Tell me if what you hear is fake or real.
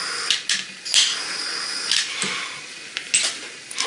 real